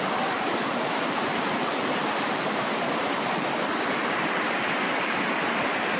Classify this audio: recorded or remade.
remade